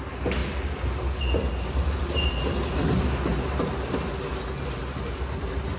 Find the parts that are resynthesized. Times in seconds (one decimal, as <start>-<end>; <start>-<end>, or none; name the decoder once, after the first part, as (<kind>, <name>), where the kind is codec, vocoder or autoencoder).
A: none